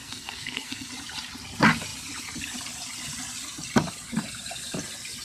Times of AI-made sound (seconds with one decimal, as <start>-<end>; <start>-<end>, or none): 0.0-0.9